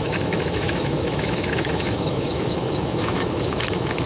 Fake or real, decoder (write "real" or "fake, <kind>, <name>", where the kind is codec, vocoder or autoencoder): fake, autoencoder, DAC-VAE